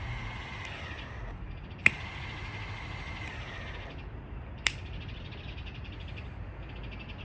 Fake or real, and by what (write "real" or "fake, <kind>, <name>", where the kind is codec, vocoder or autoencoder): real